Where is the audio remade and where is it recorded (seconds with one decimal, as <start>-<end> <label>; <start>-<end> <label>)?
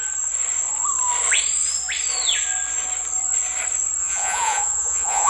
0.0-4.0 recorded; 4.0-5.3 remade